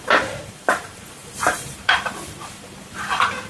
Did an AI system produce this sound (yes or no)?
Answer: yes